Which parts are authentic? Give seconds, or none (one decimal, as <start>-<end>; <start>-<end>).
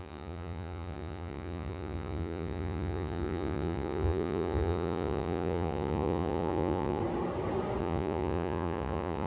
7.0-7.8